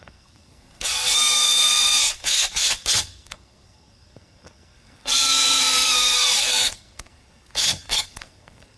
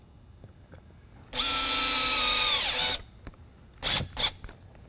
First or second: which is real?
second